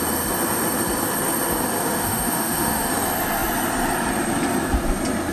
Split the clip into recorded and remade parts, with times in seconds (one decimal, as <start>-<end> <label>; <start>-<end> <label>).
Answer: 0.0-1.8 recorded; 1.8-2.9 remade; 2.9-5.3 recorded